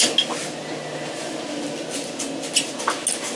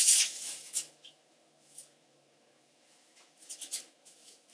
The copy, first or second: second